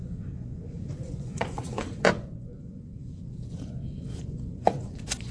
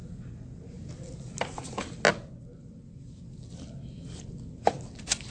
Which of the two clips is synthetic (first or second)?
first